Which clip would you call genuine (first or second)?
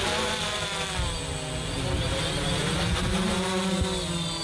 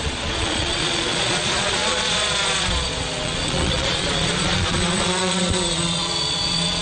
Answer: first